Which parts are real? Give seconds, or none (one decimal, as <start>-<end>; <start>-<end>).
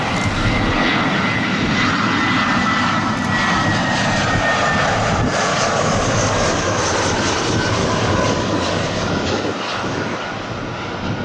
0.0-5.5; 6.8-7.8; 10.2-11.2